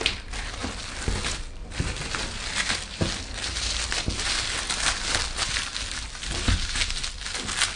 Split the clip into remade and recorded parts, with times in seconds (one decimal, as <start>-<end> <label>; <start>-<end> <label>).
0.0-7.8 recorded